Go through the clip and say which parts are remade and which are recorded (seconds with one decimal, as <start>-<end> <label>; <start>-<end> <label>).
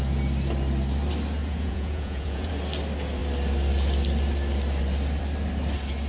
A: 0.0-1.4 recorded; 1.4-2.5 remade; 2.5-6.1 recorded